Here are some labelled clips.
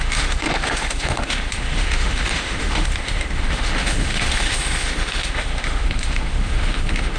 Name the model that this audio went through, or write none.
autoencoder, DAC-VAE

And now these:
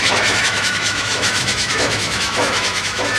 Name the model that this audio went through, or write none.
autoencoder, DAC-VAE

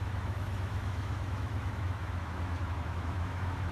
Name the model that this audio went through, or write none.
autoencoder, DAC-VAE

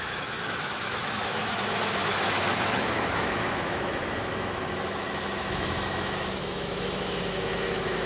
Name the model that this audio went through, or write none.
autoencoder, DAC-VAE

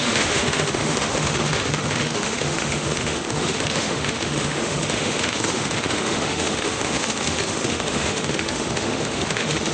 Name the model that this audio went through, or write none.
autoencoder, DAC-VAE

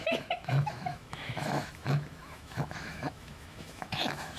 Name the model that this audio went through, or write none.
autoencoder, DAC-VAE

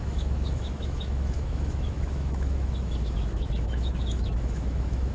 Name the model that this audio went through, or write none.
autoencoder, DAC-VAE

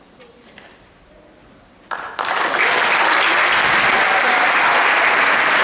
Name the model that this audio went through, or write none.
none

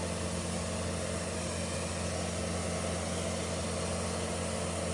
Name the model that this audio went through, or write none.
none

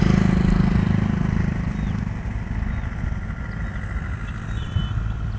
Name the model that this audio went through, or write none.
none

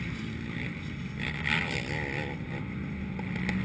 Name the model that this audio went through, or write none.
none